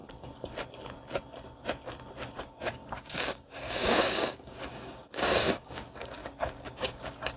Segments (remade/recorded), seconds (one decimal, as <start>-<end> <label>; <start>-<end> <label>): 0.0-2.4 recorded; 2.4-7.4 remade